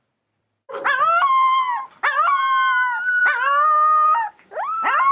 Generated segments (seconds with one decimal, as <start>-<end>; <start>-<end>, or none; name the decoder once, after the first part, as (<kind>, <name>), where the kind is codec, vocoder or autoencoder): none